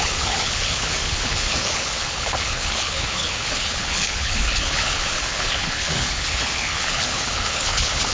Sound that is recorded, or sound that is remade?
remade